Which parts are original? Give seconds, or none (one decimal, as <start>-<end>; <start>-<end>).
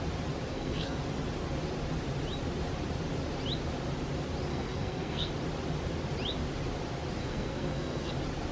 0.0-0.5; 1.0-4.5; 5.3-7.2; 8.1-8.5